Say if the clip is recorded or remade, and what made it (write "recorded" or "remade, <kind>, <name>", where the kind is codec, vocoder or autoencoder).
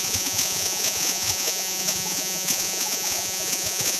remade, vocoder, Vocos